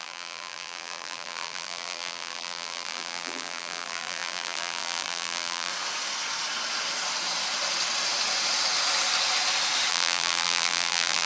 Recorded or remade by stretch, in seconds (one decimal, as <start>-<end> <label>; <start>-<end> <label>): 0.0-5.7 remade; 5.7-9.9 recorded; 9.9-11.3 remade